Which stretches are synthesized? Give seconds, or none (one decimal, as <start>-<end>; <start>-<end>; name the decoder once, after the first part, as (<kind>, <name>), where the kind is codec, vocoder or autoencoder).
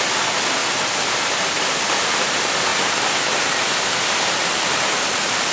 2.7-3.8 (vocoder, BigVGAN v2)